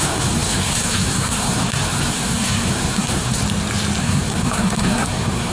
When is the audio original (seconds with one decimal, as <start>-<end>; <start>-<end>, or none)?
3.4-4.0